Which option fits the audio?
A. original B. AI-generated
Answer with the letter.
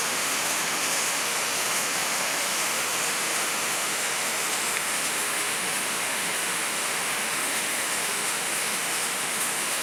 B